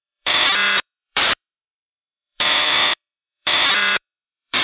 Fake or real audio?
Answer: fake